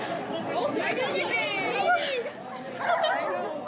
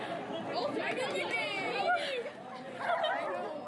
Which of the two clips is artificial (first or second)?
second